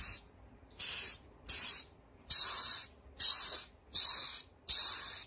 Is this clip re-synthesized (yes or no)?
no